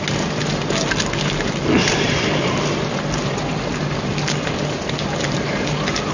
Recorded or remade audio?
recorded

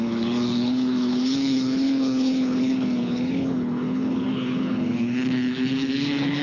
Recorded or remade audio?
remade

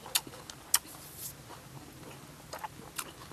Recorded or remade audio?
recorded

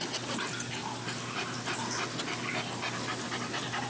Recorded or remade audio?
recorded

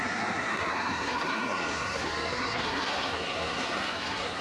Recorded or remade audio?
remade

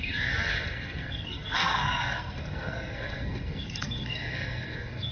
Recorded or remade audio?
remade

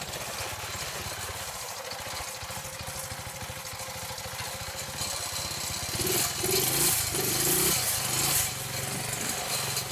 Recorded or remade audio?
recorded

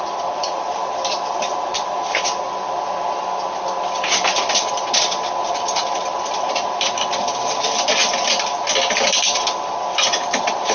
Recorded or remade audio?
recorded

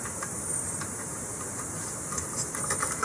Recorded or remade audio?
remade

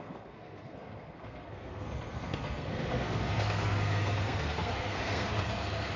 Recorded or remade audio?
remade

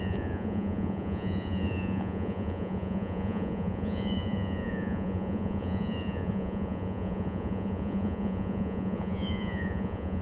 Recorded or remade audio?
remade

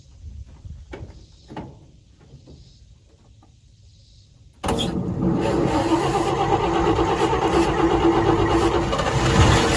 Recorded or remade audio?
recorded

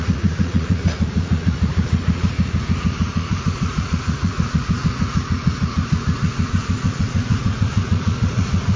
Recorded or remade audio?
remade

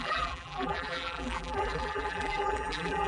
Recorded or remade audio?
remade